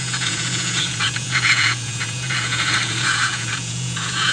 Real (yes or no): no